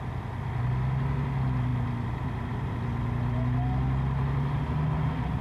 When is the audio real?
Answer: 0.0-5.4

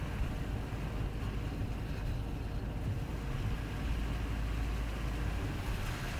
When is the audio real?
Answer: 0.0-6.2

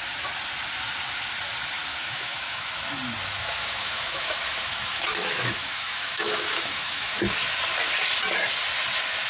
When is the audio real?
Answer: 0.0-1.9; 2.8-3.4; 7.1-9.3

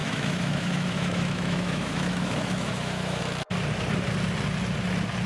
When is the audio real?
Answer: 3.2-5.3